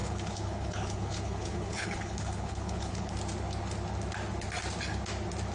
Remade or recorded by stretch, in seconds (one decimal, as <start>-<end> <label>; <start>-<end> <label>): 0.0-3.1 remade; 3.1-5.5 recorded